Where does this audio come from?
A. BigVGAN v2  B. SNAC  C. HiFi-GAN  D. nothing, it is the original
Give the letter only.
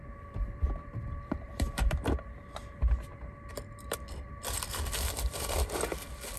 A